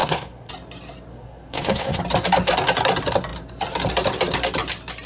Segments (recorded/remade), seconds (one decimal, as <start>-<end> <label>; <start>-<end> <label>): 0.0-0.5 remade; 0.5-1.1 recorded; 1.1-2.0 remade; 2.0-5.1 recorded